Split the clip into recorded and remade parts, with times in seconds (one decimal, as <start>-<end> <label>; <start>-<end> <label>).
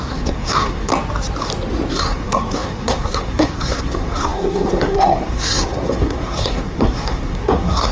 0.0-0.9 remade; 0.9-1.9 recorded; 1.9-7.9 remade